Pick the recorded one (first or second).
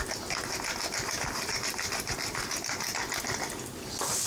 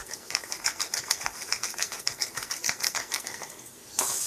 first